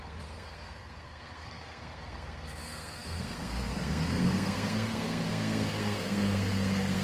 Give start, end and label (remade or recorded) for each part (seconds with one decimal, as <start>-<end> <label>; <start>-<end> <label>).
0.0-7.0 remade